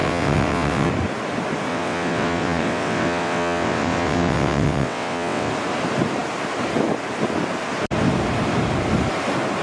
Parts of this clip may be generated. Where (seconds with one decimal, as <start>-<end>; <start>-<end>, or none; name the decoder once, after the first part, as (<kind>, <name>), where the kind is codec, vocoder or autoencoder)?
0.0-0.9 (vocoder, WaveNeXt); 1.7-5.5